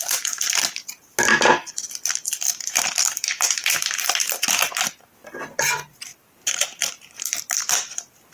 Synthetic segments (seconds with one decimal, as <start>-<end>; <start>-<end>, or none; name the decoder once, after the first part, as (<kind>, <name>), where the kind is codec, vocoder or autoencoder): 2.5-4.7 (vocoder, BigVGAN v2); 6.1-8.3